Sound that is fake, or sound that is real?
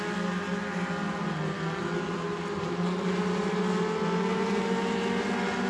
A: real